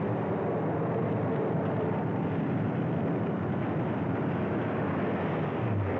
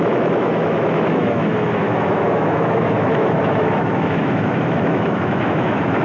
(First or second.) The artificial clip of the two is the second